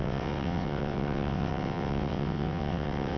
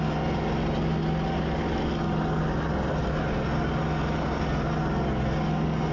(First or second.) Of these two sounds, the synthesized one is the first